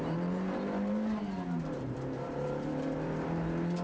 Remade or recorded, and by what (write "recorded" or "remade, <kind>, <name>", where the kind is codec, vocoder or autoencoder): remade, vocoder, BigVGAN v2